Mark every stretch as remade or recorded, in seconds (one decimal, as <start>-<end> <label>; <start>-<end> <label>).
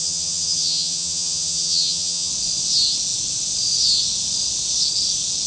0.0-2.3 remade; 2.3-5.5 recorded